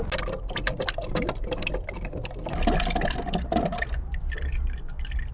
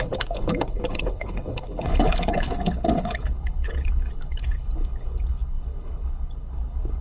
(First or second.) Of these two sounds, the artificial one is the second